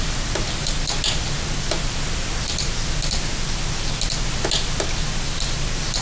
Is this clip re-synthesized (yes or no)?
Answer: no